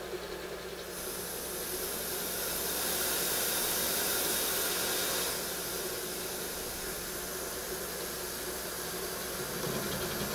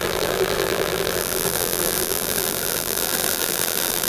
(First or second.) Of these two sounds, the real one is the first